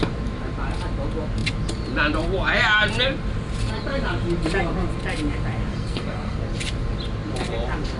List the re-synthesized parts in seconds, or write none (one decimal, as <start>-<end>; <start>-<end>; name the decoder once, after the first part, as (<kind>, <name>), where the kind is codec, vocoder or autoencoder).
5.7-6.4 (codec, SNAC)